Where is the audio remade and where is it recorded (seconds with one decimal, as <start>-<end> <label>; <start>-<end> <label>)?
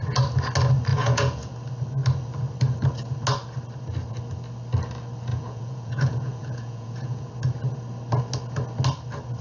0.0-0.9 recorded; 0.9-1.5 remade; 1.5-5.3 recorded; 5.3-7.3 remade; 7.3-9.4 recorded